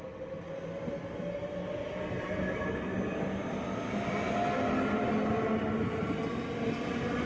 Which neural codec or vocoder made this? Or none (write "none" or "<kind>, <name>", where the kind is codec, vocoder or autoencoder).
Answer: none